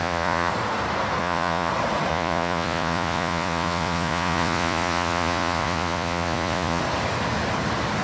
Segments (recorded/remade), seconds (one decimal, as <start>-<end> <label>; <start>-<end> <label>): 0.0-0.5 remade; 0.5-1.2 recorded; 1.2-1.7 remade; 1.7-2.1 recorded; 2.1-6.8 remade; 6.8-8.0 recorded